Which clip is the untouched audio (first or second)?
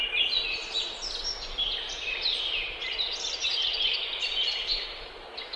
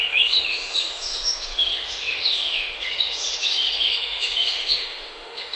first